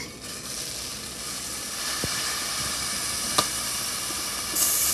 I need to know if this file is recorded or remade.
recorded